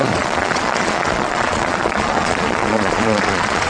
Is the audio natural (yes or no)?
no